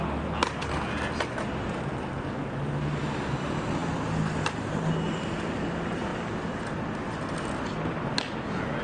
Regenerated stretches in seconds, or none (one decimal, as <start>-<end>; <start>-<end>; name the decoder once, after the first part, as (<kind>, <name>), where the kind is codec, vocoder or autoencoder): none